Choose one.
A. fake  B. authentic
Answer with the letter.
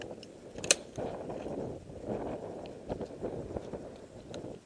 B